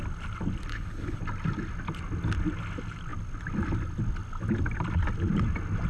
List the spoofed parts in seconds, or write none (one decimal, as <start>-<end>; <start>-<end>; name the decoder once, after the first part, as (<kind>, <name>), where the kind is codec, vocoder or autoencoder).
0.7-1.2 (codec, HILCodec)